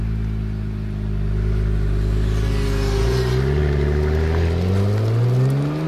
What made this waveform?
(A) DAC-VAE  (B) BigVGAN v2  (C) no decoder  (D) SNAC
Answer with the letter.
C